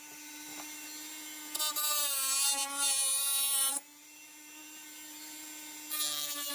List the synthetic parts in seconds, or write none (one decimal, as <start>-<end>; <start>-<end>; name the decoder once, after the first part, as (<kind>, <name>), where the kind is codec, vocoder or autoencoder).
none